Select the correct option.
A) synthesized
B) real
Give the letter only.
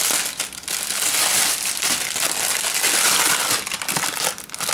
B